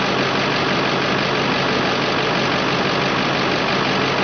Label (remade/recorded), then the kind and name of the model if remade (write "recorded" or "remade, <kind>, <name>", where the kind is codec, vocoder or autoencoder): recorded